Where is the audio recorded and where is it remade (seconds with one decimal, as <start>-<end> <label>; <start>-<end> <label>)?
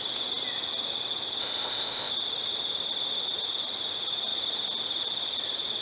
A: 0.0-1.4 recorded; 1.4-2.1 remade; 2.1-5.8 recorded